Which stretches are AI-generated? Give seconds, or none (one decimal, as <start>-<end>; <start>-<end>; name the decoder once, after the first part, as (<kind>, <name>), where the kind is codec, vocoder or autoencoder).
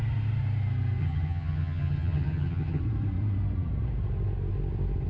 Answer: 1.0-2.8 (vocoder, HiFi-GAN)